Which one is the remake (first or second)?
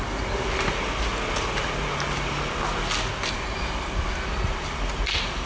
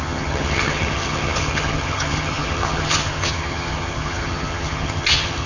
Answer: second